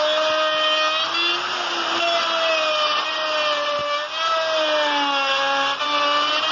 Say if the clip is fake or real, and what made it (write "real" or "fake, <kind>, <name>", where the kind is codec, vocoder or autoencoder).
real